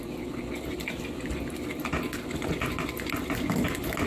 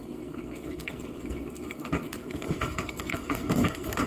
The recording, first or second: first